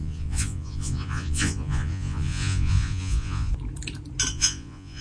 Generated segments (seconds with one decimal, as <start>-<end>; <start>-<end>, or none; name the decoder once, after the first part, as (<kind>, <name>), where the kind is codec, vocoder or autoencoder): 0.0-3.5 (vocoder, Vocos); 4.3-5.0